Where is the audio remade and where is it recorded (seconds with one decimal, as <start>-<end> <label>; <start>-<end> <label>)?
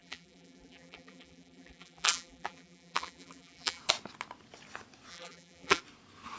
0.0-3.8 remade; 3.8-5.1 recorded; 5.1-5.8 remade; 5.8-6.4 recorded